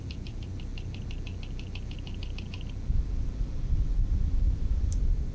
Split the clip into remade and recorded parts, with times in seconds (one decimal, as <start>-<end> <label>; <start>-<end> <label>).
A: 0.0-0.7 remade; 0.7-3.9 recorded; 3.9-5.3 remade